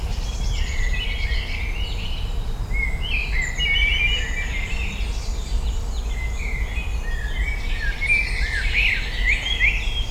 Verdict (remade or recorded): recorded